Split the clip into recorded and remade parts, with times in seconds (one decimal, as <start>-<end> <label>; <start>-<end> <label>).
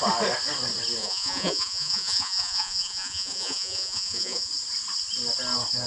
0.0-1.0 recorded; 1.0-4.5 remade; 4.5-5.9 recorded